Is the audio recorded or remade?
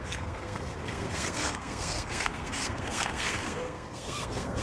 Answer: remade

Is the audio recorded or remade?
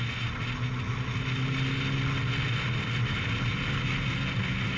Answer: recorded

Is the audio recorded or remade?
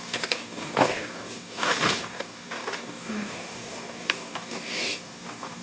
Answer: remade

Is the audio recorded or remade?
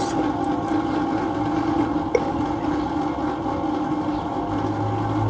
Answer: recorded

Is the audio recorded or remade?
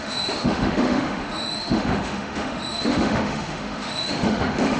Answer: remade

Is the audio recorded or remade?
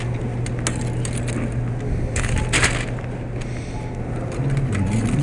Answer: recorded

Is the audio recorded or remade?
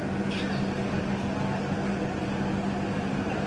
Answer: recorded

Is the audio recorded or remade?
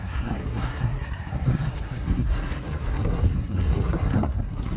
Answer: remade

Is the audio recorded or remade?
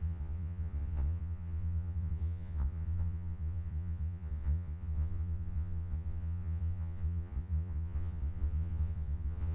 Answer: remade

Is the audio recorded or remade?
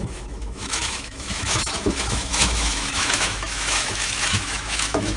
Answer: remade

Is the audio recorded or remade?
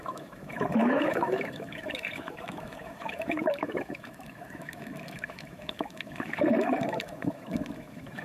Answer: remade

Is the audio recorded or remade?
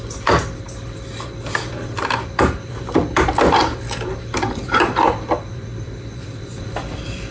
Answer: remade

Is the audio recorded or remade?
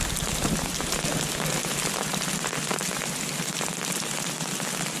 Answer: recorded